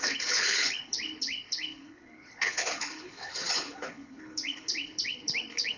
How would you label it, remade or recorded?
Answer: remade